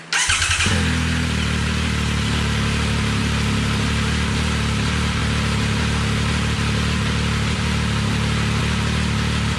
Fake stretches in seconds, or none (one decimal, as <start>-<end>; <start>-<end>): none